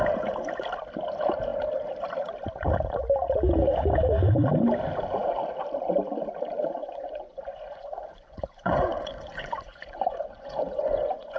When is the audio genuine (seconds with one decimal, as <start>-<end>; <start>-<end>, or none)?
0.0-6.8